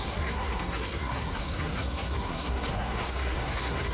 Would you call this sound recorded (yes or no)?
no